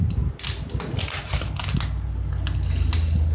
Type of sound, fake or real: real